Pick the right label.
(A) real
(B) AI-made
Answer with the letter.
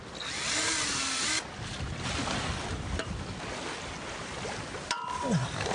A